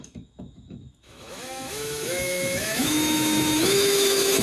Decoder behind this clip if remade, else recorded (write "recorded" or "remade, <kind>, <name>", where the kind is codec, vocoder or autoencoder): remade, autoencoder, DAC-VAE